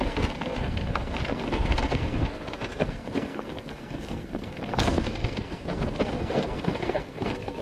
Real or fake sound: fake